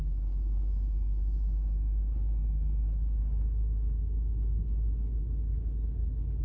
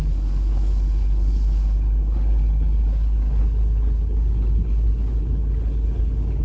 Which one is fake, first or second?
second